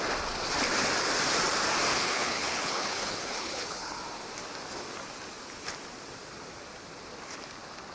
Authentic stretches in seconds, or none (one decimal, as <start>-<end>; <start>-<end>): 0.0-1.9; 4.0-7.9